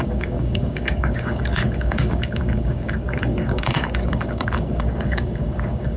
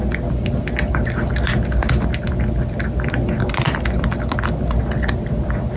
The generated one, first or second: first